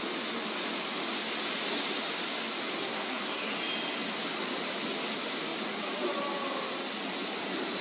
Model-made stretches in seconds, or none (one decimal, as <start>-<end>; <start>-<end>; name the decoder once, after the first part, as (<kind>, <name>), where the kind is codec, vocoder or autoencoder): 2.8-3.5 (codec, SNAC)